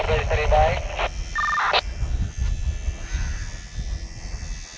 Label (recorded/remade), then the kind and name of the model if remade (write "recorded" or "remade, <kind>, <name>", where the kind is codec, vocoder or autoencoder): recorded